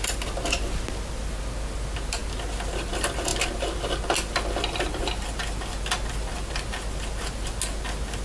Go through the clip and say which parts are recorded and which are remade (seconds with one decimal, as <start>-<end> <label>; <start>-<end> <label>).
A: 0.0-8.2 recorded